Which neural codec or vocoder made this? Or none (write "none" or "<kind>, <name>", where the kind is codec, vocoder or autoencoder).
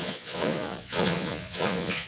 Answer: vocoder, Vocos